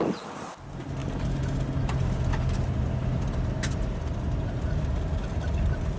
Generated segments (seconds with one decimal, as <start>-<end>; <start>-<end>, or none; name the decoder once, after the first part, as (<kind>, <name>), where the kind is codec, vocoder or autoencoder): none